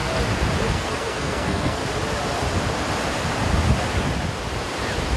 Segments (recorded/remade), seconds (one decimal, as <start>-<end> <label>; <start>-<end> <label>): 0.0-0.7 recorded; 0.7-1.8 remade; 1.8-5.2 recorded